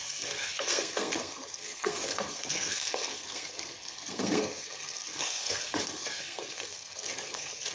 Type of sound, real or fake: fake